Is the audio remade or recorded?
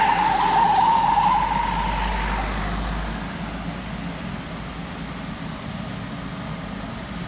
recorded